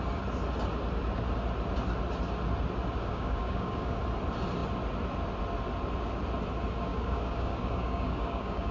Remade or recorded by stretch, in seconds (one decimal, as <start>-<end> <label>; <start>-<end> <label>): 0.0-3.1 recorded; 3.1-4.0 remade; 4.0-6.9 recorded; 6.9-8.7 remade